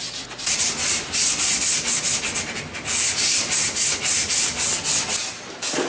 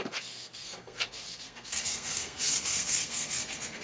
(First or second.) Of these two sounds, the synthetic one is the second